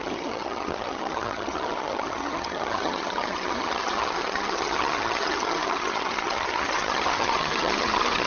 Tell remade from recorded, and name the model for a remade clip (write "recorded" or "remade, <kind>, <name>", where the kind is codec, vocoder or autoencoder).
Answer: remade, vocoder, HiFi-GAN